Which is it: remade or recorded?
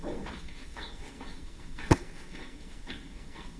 remade